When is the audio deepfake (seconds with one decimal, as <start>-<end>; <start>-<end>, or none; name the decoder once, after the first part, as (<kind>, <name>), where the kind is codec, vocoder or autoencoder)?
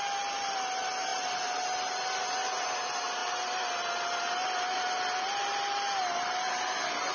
none